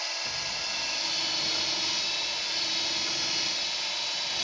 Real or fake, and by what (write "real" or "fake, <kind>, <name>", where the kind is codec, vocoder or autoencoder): real